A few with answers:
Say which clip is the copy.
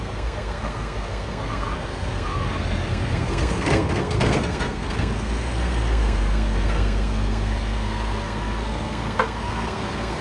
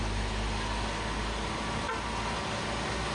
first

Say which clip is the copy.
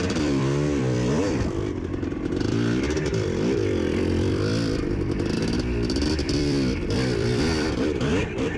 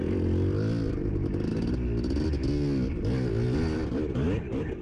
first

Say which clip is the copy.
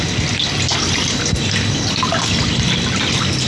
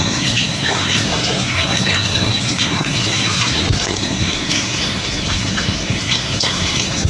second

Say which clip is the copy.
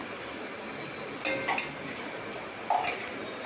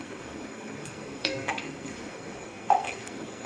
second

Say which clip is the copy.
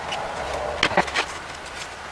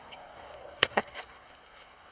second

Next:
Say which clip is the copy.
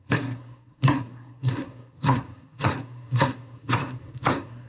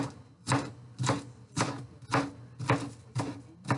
first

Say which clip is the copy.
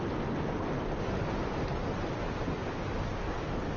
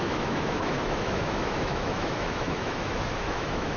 second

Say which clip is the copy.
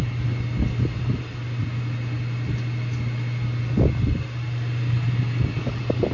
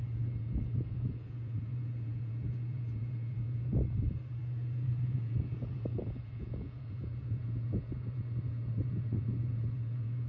second